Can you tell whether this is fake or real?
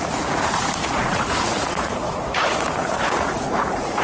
fake